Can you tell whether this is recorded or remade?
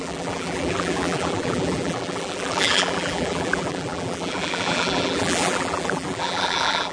remade